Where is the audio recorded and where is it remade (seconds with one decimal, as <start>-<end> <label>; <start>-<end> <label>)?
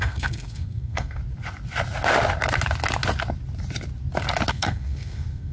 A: 0.0-1.2 remade; 1.2-4.5 recorded; 4.5-5.5 remade